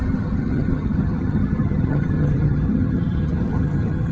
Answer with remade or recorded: remade